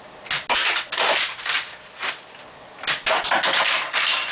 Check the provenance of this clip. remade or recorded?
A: recorded